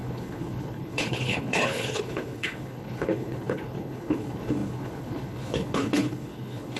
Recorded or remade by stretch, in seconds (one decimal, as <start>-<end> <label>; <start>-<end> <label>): 0.0-6.8 remade